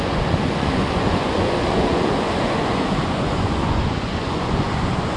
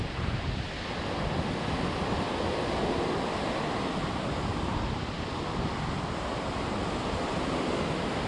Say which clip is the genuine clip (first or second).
second